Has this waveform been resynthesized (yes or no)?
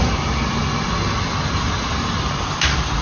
no